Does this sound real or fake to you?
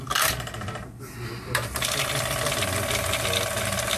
real